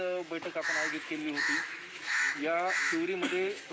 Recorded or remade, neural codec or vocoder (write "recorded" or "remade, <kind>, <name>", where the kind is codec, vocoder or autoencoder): remade, autoencoder, DAC-VAE